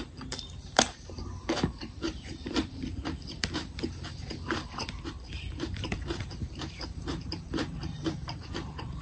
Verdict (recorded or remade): remade